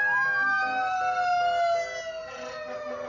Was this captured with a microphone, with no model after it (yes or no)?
yes